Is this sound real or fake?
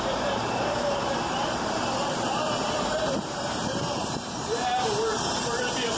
fake